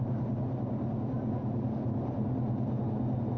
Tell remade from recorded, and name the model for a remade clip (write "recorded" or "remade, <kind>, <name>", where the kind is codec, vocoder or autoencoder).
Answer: recorded